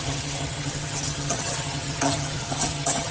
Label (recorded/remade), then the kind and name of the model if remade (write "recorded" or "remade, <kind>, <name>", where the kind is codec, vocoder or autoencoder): remade, vocoder, HiFi-GAN